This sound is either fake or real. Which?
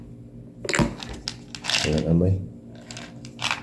real